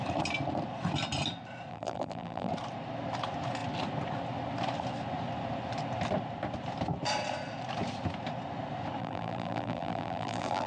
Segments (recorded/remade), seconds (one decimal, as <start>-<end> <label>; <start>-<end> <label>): 0.0-1.7 recorded; 1.7-2.5 remade; 2.5-9.0 recorded; 9.0-10.7 remade